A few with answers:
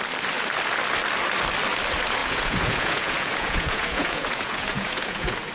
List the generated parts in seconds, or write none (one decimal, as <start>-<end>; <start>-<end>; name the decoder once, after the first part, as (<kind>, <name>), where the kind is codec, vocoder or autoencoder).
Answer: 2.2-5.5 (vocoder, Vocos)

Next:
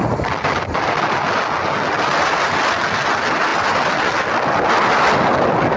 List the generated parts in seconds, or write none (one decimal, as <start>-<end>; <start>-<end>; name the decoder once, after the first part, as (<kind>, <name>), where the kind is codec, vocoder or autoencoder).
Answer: none

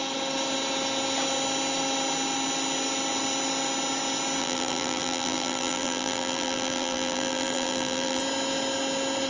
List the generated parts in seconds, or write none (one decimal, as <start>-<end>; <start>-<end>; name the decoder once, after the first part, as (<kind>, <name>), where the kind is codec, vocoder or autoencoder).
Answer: 4.4-8.2 (vocoder, BigVGAN v2)

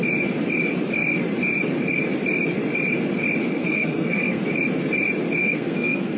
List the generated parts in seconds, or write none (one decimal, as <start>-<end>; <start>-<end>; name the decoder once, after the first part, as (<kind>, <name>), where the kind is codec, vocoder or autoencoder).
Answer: 3.4-4.4 (codec, SNAC); 5.4-6.2

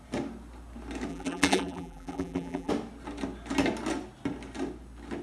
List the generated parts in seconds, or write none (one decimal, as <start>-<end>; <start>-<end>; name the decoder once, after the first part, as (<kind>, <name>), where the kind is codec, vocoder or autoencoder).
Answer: 1.1-2.7 (vocoder, BigVGAN v2)

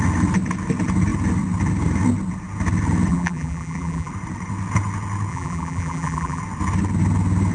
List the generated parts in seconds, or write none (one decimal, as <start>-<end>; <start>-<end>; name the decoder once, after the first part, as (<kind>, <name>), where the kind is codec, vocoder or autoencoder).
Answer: 3.1-4.1 (vocoder, BigVGAN v2); 5.3-6.4

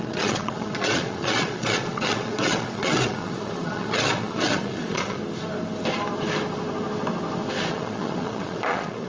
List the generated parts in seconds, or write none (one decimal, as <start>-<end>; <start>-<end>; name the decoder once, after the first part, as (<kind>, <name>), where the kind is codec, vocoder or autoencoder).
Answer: 0.0-5.2 (vocoder, Vocos); 7.7-9.1